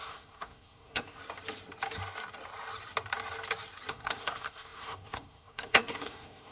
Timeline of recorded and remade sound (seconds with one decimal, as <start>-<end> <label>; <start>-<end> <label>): 0.0-1.2 remade; 1.2-3.9 recorded; 3.9-6.5 remade